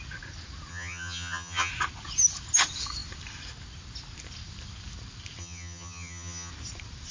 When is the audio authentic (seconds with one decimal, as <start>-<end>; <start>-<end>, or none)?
0.0-0.7; 1.7-5.4; 6.5-7.1